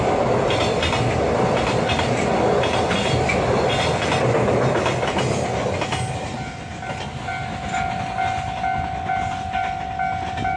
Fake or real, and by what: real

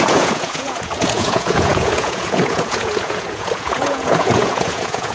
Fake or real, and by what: fake, vocoder, Vocos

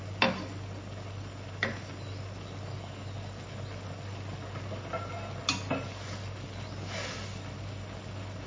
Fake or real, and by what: real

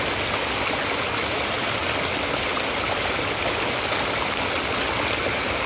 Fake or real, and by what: real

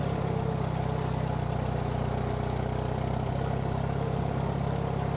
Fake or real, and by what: real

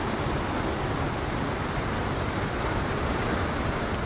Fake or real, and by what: real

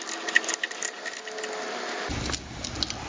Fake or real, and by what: real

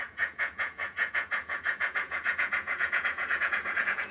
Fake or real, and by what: fake, vocoder, Vocos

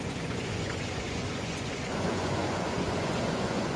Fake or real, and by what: fake, vocoder, Vocos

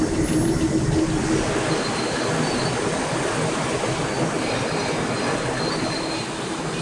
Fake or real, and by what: real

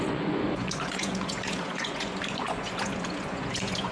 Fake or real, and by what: fake, vocoder, Vocos